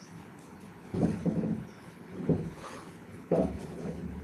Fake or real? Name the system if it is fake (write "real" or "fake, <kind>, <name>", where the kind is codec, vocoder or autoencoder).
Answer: fake, codec, HILCodec